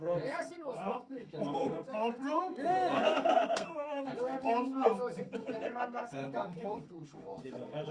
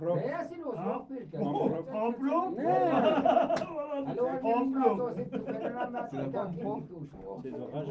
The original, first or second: second